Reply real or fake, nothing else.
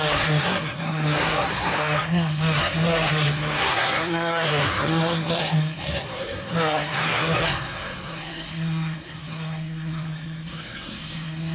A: fake